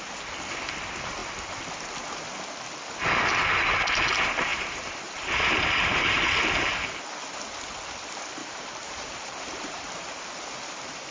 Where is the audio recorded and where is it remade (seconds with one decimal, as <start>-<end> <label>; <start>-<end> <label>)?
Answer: 0.0-4.5 recorded; 4.5-5.3 remade; 5.3-8.4 recorded; 8.4-10.2 remade; 10.2-11.1 recorded